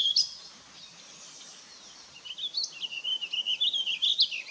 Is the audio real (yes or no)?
yes